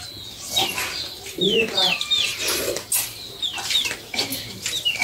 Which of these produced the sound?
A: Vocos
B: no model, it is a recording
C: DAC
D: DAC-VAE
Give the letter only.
B